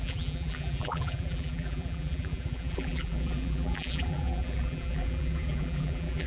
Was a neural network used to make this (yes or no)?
yes